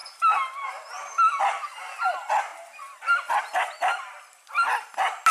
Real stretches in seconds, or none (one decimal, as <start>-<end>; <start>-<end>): 0.0-5.3